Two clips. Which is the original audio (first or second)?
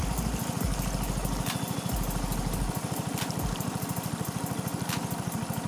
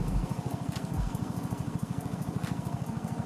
first